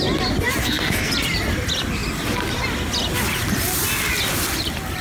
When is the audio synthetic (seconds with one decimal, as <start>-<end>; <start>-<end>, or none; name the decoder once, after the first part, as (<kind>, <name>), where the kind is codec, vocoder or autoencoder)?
0.6-1.1 (codec, SNAC)